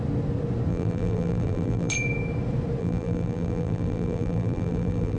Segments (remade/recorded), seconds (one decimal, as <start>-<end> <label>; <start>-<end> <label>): 0.0-0.7 recorded; 0.7-1.9 remade; 1.9-2.8 recorded; 2.8-5.2 remade